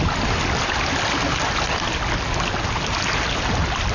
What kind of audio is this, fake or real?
real